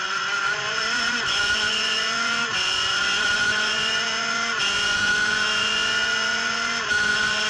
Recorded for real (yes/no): no